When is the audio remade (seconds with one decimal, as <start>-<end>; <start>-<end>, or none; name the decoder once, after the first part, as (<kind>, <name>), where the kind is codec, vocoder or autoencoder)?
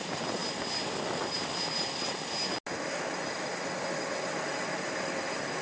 none